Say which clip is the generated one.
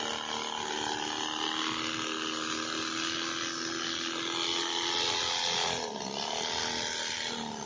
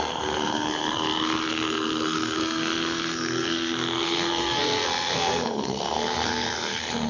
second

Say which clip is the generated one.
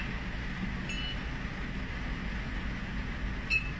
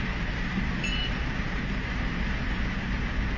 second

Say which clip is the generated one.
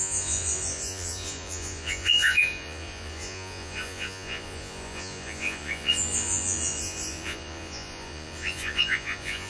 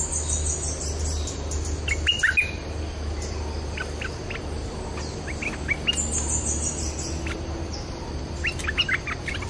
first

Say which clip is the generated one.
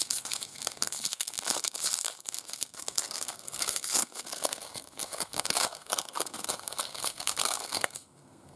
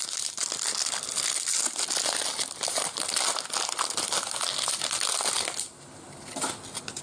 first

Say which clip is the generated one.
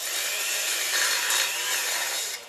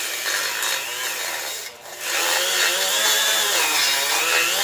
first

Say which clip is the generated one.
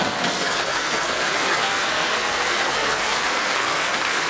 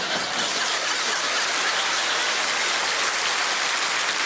first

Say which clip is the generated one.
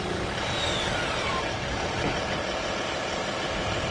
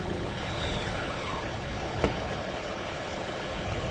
second